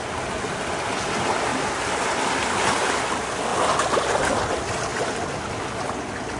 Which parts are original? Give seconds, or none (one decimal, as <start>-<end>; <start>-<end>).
0.0-6.4